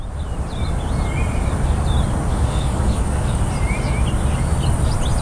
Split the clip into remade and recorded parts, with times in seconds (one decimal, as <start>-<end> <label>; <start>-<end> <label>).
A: 0.0-2.3 recorded; 2.3-3.4 remade; 3.4-5.2 recorded